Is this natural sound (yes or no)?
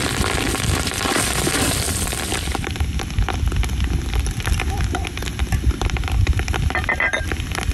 no